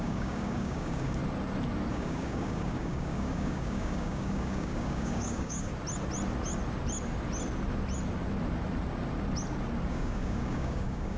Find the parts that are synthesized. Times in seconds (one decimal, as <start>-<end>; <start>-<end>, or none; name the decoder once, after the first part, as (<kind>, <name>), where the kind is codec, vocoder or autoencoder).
0.0-1.2 (codec, DAC); 1.9-5.7; 9.9-11.2